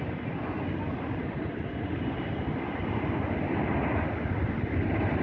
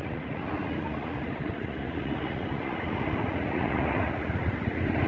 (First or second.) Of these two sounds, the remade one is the second